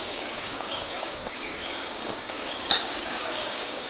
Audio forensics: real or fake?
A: fake